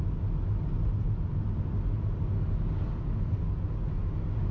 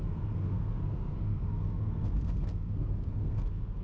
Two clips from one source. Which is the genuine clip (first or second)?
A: first